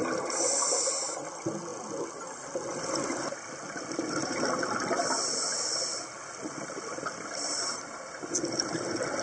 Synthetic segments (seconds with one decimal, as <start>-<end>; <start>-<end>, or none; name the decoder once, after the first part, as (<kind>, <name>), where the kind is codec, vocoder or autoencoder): none